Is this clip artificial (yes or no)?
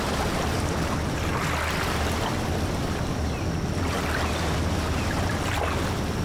no